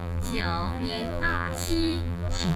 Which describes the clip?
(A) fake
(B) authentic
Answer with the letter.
A